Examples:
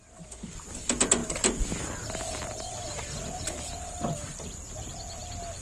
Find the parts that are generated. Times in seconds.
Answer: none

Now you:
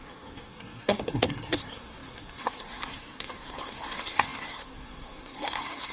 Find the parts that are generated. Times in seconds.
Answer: 0.0-5.9 (codec, SNAC)

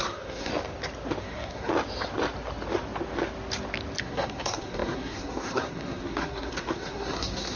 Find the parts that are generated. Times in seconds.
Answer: 0.0-0.5 (codec, SNAC); 1.2-1.7; 4.0-7.6

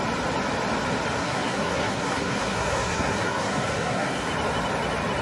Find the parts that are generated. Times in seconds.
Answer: 1.2-4.3 (codec, SNAC)

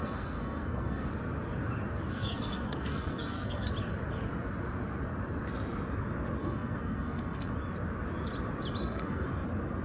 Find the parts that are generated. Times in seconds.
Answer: 0.0-1.1 (codec, SNAC); 2.1-3.7; 6.4-7.5; 8.8-9.3

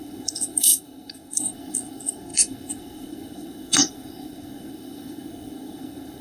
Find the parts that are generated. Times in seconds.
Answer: 0.0-6.2 (codec, SNAC)

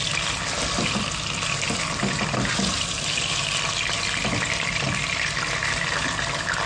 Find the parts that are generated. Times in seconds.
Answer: none

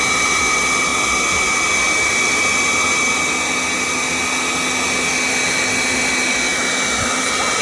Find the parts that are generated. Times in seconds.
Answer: none